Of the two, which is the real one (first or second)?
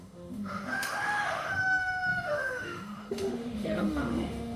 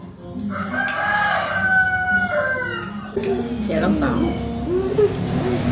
second